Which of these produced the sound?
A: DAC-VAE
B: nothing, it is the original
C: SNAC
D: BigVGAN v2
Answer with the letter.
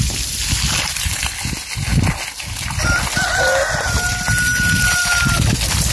B